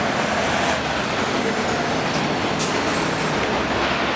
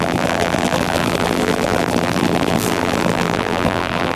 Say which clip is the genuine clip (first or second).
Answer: first